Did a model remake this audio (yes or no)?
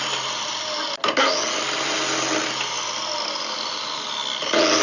no